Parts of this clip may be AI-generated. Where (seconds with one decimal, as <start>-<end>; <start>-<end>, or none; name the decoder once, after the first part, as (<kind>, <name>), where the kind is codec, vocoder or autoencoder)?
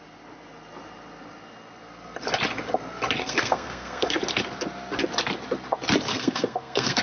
3.2-4.2 (codec, SNAC); 6.1-7.0